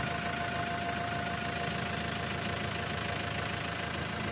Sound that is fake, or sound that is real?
real